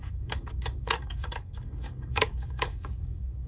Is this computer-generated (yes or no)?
yes